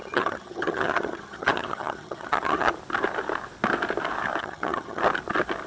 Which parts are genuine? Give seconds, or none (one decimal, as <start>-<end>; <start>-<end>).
2.7-4.4; 5.0-5.7